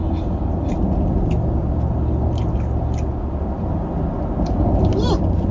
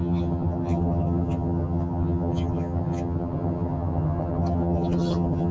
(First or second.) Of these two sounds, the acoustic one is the first